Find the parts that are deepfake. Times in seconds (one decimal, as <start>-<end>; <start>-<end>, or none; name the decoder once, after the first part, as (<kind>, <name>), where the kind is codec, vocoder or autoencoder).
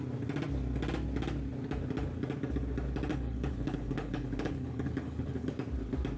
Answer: 3.1-5.5 (codec, HILCodec)